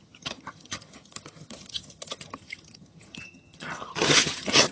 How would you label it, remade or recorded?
remade